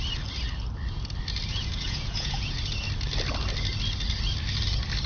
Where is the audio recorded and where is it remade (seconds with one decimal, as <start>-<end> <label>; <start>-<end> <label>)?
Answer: 0.0-1.5 recorded; 1.5-2.6 remade; 2.6-5.1 recorded